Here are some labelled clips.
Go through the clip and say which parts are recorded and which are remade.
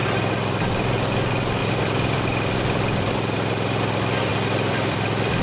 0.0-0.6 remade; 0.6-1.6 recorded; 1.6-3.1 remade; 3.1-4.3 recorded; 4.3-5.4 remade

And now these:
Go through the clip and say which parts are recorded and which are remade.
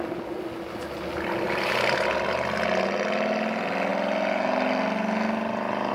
0.0-5.9 recorded